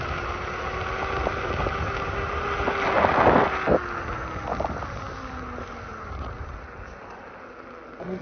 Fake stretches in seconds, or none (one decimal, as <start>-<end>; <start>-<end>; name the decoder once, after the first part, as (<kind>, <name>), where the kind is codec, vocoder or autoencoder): 5.9-6.6 (vocoder, BigVGAN v2)